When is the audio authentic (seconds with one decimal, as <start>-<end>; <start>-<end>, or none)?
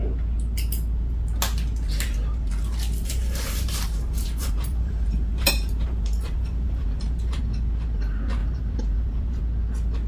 0.0-3.0; 7.4-8.4; 9.4-10.1